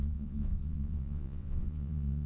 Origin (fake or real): fake